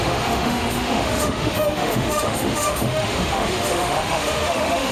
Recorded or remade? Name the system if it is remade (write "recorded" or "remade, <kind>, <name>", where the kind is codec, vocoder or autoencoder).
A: remade, autoencoder, DAC-VAE